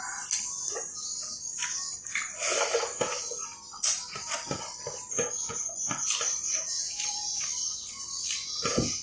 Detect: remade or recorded recorded